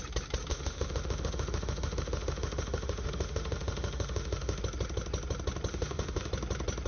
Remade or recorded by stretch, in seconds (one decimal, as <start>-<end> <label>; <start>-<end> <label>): 0.0-0.5 recorded; 0.5-4.6 remade; 4.6-5.7 recorded; 5.7-6.3 remade; 6.3-6.9 recorded